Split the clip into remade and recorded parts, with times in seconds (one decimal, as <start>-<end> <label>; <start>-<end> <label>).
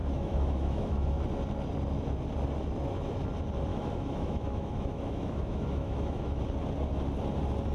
0.0-1.2 remade; 1.2-3.7 recorded; 3.7-6.4 remade; 6.4-7.7 recorded